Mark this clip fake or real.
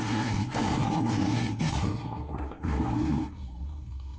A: fake